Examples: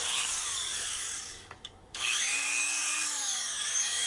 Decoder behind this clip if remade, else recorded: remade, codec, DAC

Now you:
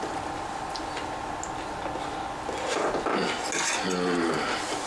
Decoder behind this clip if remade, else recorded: recorded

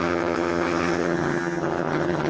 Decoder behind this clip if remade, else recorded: remade, vocoder, HiFi-GAN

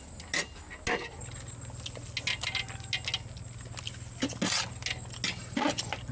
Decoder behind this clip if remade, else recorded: recorded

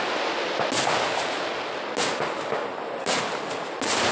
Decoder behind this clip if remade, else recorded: recorded